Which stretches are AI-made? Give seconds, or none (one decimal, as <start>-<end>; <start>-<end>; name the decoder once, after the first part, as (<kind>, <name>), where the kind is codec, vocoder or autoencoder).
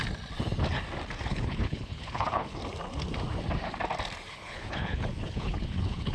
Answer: 1.3-2.6 (codec, HILCodec); 4.3-6.1